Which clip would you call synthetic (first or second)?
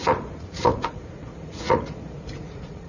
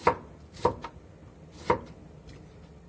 first